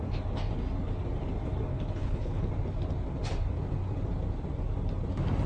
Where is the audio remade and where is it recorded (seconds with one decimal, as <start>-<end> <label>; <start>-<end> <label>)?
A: 0.0-1.7 recorded; 1.7-2.5 remade; 2.5-5.5 recorded